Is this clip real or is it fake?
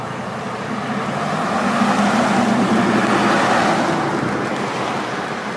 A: real